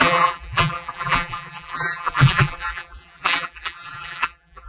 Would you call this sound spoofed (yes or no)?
yes